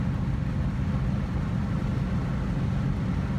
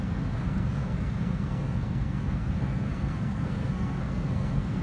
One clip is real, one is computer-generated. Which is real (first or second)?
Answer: first